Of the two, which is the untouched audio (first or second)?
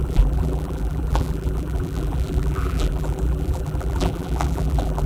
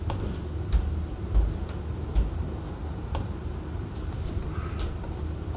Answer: second